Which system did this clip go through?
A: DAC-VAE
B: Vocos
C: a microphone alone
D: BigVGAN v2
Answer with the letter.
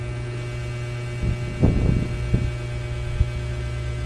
C